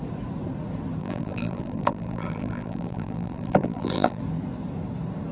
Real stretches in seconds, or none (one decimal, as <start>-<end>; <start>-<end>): 0.0-1.0; 4.2-5.3